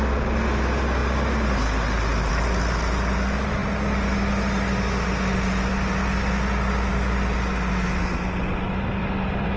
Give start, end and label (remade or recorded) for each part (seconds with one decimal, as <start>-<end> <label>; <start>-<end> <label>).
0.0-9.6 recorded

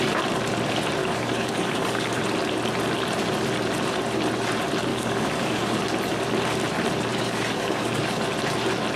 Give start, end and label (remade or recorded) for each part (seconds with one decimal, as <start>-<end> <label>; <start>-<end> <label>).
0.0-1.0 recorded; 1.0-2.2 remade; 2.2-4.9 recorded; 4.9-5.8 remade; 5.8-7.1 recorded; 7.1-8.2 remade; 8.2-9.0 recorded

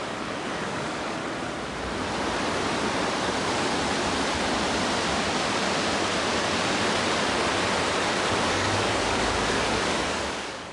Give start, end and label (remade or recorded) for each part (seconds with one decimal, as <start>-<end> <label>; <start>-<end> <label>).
0.0-1.2 remade; 1.2-3.2 recorded; 3.2-3.7 remade; 3.7-8.5 recorded; 8.5-10.7 remade

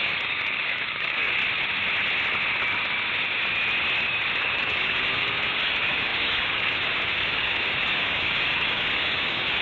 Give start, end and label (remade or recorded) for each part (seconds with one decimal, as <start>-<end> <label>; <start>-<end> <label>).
0.0-1.4 remade; 1.4-4.4 recorded; 4.4-9.6 remade

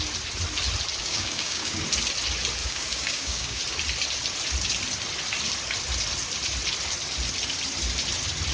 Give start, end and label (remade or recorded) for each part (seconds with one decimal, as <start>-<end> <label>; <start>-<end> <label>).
0.0-1.0 recorded; 1.0-1.8 remade; 1.8-2.6 recorded; 2.6-3.6 remade; 3.6-8.5 recorded

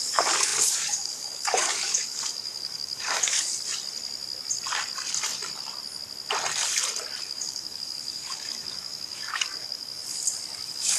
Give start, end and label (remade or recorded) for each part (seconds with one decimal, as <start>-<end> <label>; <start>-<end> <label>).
0.0-3.5 remade; 3.5-7.2 recorded; 7.2-10.0 remade; 10.0-10.6 recorded; 10.6-11.0 remade

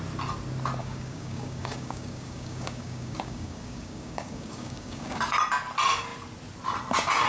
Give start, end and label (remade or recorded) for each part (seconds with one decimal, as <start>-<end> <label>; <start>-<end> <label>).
0.0-0.8 recorded; 0.8-5.2 remade; 5.2-7.3 recorded